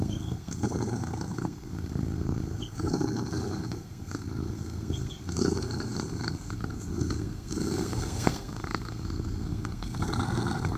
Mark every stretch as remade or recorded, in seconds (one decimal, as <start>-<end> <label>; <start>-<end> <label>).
0.0-10.8 remade